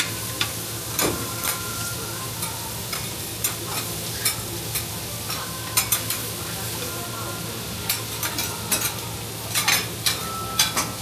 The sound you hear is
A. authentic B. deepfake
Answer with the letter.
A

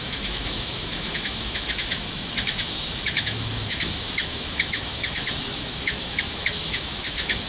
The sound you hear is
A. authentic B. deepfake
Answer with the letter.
B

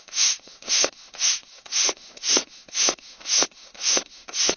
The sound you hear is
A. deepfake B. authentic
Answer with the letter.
A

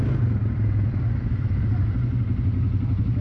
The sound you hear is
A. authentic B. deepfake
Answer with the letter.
A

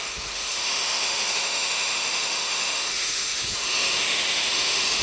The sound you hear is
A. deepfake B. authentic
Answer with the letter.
A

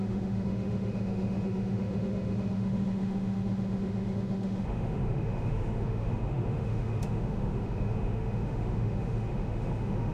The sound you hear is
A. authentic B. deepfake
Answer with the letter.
B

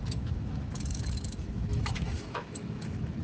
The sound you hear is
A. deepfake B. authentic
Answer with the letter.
A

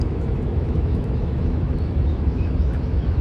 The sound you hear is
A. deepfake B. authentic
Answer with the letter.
A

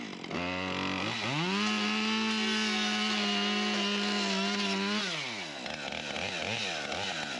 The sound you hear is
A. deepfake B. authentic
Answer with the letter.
B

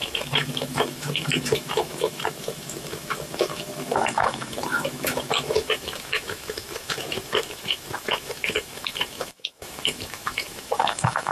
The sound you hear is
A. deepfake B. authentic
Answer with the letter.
A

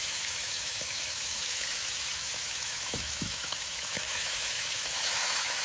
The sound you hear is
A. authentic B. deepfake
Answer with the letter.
B